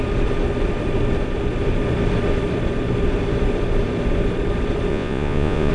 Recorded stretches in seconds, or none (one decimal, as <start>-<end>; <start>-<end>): 0.0-4.9